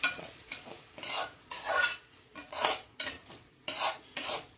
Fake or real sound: fake